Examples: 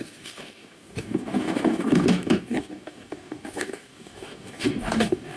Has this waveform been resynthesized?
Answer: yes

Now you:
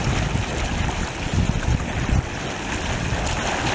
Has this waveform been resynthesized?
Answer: no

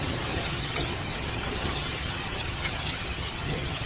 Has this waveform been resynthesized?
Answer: yes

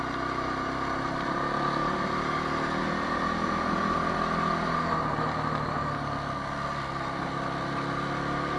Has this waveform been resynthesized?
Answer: no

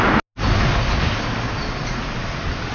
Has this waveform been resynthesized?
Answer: no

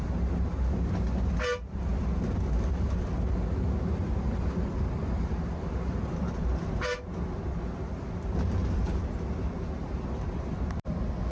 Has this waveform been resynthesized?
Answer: no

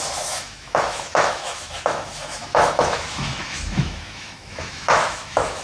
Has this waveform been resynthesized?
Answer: yes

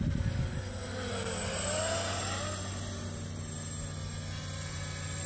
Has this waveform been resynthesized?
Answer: no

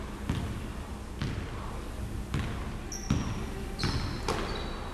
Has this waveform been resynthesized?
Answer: no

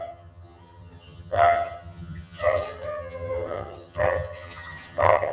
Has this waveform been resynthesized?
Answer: yes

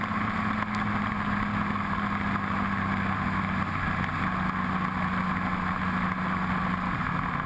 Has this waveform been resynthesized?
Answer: no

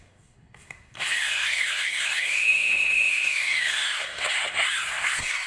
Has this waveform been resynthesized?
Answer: yes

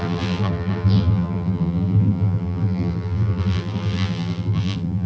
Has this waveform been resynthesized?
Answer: yes